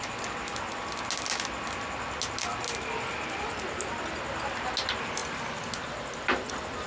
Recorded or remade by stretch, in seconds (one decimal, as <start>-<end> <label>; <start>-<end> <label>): 0.0-6.9 recorded